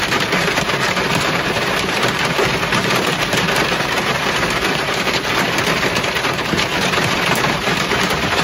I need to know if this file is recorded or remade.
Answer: remade